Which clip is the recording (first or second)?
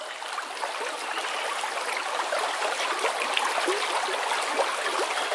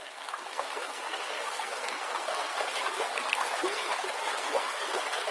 first